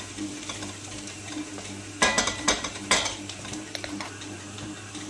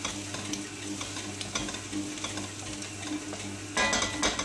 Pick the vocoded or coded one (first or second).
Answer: first